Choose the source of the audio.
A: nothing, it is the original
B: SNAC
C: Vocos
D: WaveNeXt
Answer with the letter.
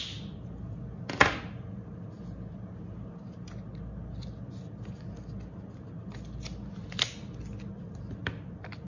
A